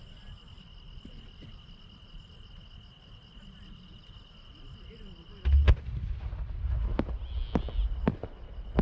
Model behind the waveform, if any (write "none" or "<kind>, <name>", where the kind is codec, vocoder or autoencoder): none